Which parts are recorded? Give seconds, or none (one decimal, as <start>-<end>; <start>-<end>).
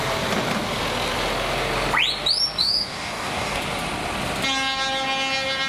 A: 0.0-2.6; 3.6-5.7